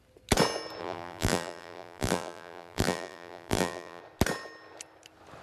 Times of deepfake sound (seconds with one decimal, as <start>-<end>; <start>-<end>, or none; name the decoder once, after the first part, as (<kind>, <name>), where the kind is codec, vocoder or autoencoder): 0.8-4.0 (vocoder, BigVGAN v2)